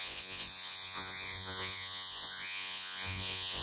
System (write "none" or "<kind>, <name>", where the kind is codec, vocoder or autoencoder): vocoder, Vocos